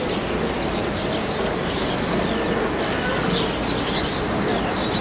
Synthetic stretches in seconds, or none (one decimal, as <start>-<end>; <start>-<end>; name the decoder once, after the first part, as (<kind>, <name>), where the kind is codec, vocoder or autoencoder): none